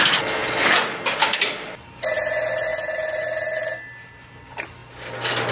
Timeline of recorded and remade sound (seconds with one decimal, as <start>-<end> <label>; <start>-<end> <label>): 0.0-5.5 recorded